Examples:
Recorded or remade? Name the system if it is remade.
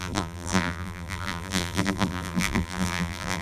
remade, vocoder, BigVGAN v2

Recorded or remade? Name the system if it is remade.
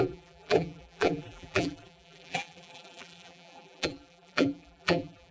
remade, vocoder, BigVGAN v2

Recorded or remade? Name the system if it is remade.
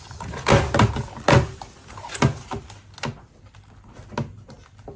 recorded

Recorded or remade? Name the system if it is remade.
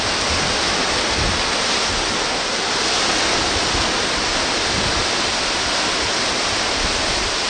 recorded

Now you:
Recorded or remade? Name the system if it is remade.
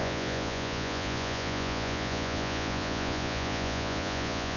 remade, vocoder, Vocos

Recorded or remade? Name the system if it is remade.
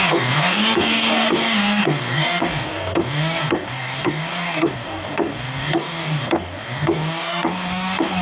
remade, codec, DAC